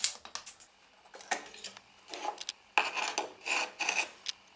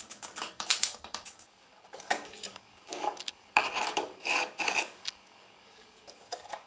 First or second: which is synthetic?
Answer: second